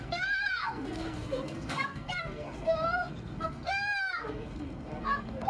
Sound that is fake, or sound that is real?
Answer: fake